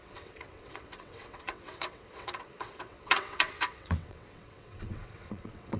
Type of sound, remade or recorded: remade